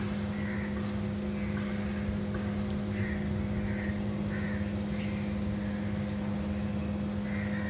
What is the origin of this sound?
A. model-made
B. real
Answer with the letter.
B